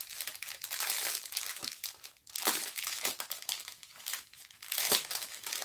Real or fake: fake